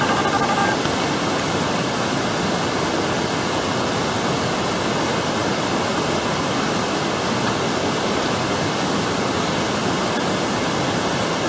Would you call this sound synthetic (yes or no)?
no